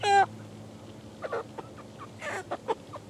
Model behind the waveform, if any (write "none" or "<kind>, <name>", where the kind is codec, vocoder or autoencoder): none